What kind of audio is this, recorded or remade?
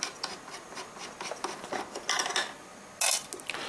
recorded